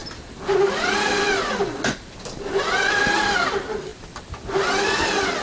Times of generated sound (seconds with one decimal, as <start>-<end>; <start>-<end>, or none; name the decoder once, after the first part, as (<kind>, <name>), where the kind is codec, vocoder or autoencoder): 0.0-2.3 (vocoder, BigVGAN v2); 3.9-4.4